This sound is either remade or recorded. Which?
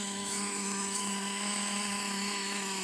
remade